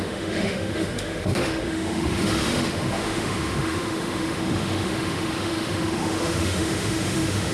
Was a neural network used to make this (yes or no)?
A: yes